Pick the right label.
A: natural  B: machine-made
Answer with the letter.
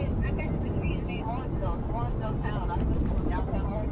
A